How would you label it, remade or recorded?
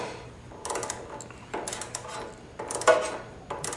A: recorded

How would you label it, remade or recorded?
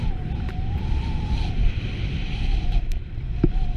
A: remade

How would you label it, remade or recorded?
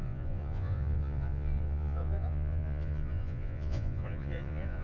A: remade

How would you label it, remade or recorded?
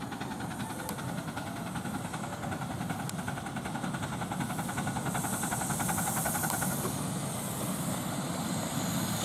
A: recorded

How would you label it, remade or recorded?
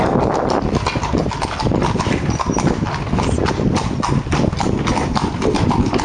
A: recorded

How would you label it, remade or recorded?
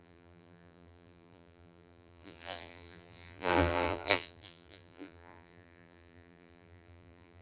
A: remade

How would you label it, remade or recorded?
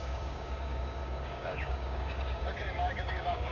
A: remade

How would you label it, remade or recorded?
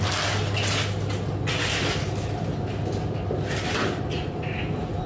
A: recorded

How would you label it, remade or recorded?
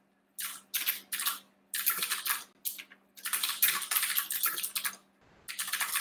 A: recorded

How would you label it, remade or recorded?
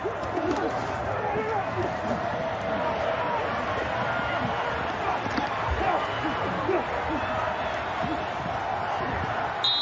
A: recorded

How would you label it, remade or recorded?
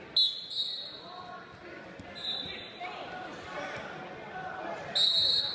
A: recorded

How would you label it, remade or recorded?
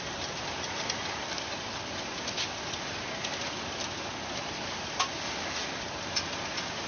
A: recorded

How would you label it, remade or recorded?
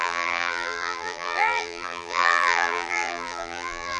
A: remade